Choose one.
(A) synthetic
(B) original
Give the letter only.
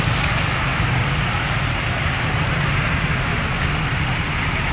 B